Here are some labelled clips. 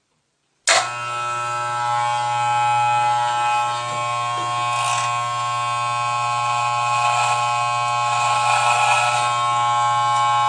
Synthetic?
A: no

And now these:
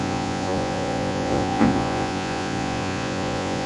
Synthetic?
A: yes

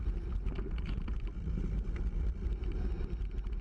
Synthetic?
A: no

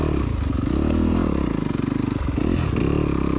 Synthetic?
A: no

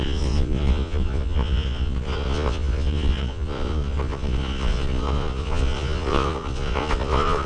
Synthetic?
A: yes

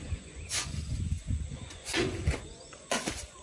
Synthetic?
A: yes